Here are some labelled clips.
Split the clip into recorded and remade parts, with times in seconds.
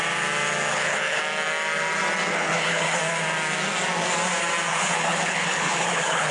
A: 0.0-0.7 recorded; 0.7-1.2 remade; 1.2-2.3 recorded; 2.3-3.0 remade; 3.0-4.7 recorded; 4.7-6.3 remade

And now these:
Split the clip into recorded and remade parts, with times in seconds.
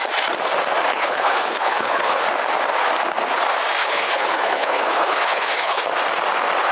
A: 0.0-0.9 recorded; 0.9-2.2 remade; 2.2-3.8 recorded; 3.8-5.8 remade; 5.8-6.7 recorded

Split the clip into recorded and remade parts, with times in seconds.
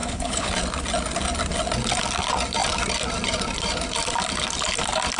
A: 0.0-0.5 remade; 0.5-5.2 recorded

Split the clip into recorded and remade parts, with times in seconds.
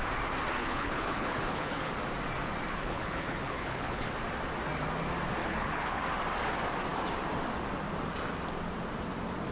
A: 0.0-0.6 recorded; 0.6-1.9 remade; 1.9-2.7 recorded; 2.7-4.1 remade; 4.1-5.4 recorded; 5.4-6.0 remade; 6.0-9.5 recorded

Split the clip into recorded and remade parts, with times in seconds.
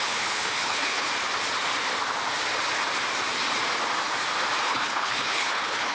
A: 0.0-1.1 remade; 1.1-4.6 recorded; 4.6-5.9 remade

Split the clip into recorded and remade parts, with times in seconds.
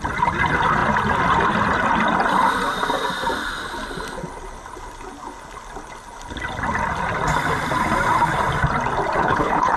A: 0.0-9.2 recorded; 9.2-9.8 remade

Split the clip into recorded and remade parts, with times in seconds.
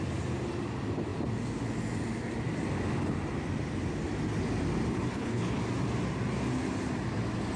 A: 0.0-5.1 recorded; 5.1-5.6 remade; 5.6-7.6 recorded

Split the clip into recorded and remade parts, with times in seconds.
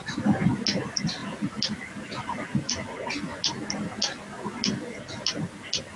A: 0.0-6.0 recorded